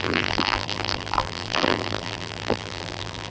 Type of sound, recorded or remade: remade